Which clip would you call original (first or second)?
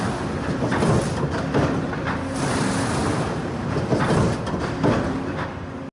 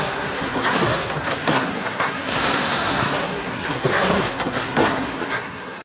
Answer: first